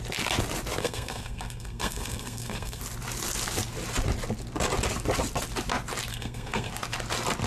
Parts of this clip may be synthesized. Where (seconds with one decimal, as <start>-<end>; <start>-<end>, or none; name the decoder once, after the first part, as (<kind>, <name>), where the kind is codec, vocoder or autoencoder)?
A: 0.8-2.8 (codec, SNAC); 6.1-6.7